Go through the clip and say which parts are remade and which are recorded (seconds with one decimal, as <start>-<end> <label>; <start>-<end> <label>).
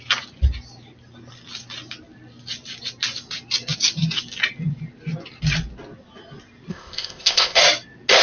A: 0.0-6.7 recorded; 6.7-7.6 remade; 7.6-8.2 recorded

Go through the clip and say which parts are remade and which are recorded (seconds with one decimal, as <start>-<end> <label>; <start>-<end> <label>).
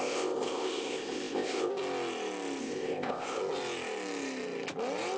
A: 0.0-1.7 remade; 1.7-2.6 recorded; 2.6-3.4 remade; 3.4-5.2 recorded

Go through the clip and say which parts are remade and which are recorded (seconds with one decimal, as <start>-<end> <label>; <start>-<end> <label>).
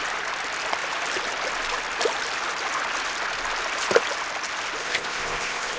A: 0.0-4.8 recorded; 4.8-5.8 remade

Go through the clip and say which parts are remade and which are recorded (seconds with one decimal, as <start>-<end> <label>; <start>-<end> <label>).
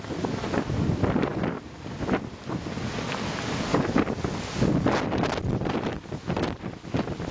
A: 0.0-7.3 recorded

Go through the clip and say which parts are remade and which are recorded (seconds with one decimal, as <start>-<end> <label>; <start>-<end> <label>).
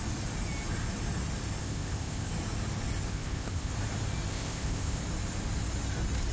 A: 0.0-1.6 recorded; 1.6-2.3 remade; 2.3-3.1 recorded; 3.1-3.7 remade; 3.7-4.3 recorded; 4.3-5.0 remade; 5.0-6.3 recorded